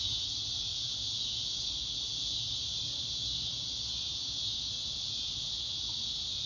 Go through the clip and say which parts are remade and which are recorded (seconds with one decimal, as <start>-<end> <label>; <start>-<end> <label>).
0.0-6.5 recorded

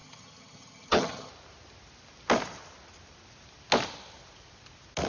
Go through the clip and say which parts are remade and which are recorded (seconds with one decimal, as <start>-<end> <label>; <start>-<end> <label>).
0.0-1.3 remade; 1.3-5.1 recorded